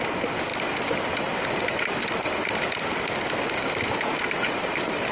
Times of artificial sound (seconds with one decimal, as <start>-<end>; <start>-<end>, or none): none